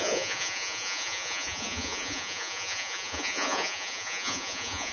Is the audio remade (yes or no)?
yes